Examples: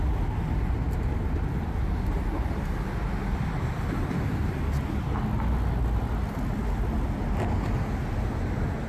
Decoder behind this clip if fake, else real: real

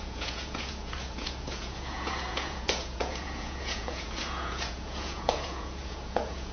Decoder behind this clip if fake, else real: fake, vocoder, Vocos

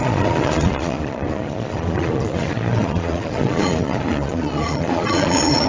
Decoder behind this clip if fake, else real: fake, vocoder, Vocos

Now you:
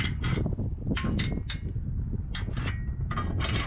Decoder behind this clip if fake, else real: real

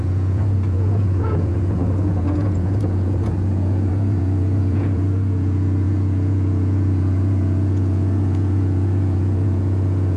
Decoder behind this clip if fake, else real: fake, vocoder, Vocos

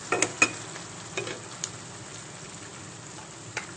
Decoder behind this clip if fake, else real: real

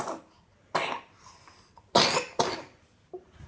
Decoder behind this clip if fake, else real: real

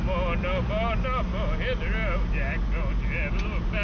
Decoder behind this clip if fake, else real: real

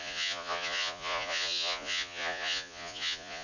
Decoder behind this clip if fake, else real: fake, vocoder, Vocos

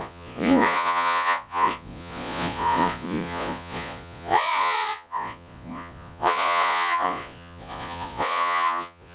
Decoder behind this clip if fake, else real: fake, vocoder, Vocos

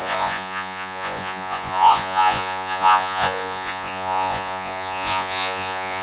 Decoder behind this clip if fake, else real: fake, vocoder, Vocos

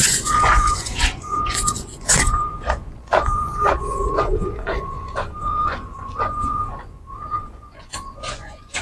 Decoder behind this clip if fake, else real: fake, vocoder, Vocos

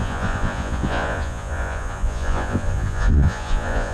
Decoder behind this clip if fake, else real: fake, vocoder, Vocos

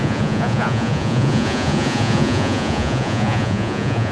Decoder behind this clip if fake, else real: fake, vocoder, Vocos